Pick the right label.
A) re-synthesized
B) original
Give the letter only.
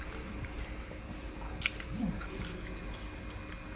B